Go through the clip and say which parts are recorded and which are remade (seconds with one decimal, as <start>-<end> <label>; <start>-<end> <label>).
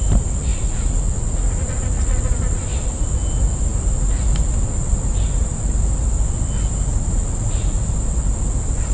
0.0-0.5 recorded; 0.5-2.7 remade; 2.7-6.9 recorded; 6.9-7.9 remade; 7.9-8.9 recorded